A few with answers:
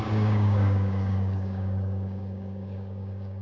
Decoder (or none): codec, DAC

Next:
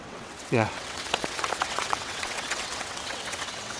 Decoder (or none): vocoder, WaveNeXt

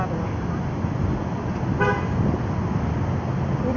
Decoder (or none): none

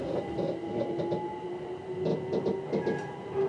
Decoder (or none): none